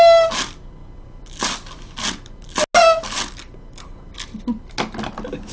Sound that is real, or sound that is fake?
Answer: real